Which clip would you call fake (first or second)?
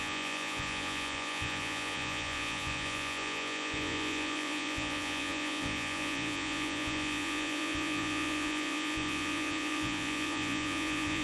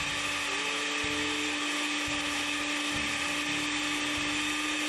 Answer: first